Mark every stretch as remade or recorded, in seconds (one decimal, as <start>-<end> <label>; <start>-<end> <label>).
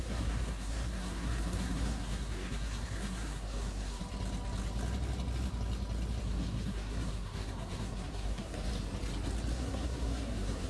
0.0-4.0 remade; 4.0-6.2 recorded; 6.2-8.7 remade; 8.7-9.5 recorded; 9.5-10.7 remade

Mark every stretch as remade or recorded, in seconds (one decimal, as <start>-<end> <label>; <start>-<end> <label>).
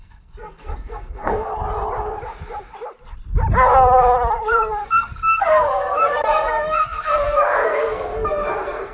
0.0-1.5 remade; 1.5-4.8 recorded; 4.8-8.9 remade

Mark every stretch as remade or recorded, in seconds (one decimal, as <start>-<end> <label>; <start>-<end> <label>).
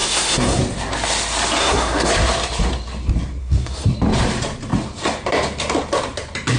0.0-0.6 remade; 0.6-1.6 recorded; 1.6-2.1 remade; 2.1-3.4 recorded; 3.4-3.9 remade; 3.9-6.6 recorded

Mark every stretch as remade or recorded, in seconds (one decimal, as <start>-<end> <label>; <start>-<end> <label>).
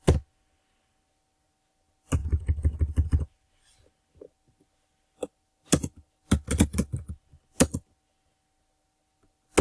0.0-9.6 recorded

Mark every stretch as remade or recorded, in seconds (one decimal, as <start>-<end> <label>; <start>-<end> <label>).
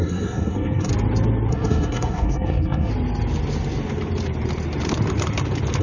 0.0-0.9 remade; 0.9-1.5 recorded; 1.5-2.9 remade; 2.9-5.8 recorded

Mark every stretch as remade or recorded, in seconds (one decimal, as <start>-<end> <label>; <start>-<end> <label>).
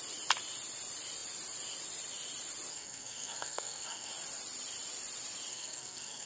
0.0-2.7 recorded; 2.7-4.1 remade; 4.1-5.5 recorded; 5.5-6.3 remade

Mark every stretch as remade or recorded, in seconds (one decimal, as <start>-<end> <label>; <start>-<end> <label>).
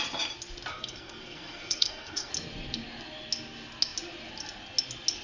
0.0-0.7 recorded; 0.7-2.3 remade; 2.3-5.2 recorded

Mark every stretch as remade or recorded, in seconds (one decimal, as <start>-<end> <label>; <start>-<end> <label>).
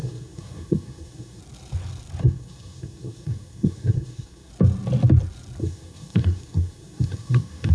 0.0-1.4 remade; 1.4-2.2 recorded; 2.2-4.5 remade; 4.5-5.6 recorded; 5.6-7.7 remade